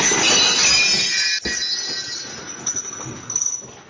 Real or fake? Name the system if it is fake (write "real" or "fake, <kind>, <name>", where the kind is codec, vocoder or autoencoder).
real